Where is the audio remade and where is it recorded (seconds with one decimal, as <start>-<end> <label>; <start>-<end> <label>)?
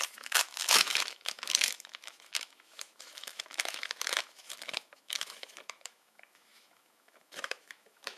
0.0-8.2 remade